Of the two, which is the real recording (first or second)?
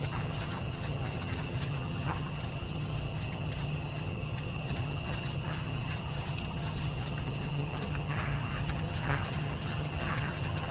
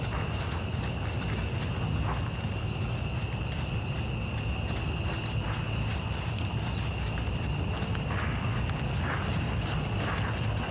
second